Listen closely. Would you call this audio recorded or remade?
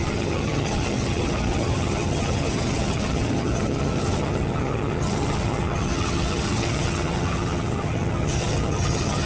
remade